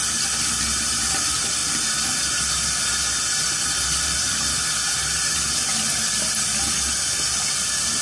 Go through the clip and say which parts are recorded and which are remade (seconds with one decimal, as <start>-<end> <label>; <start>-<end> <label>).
0.0-8.0 recorded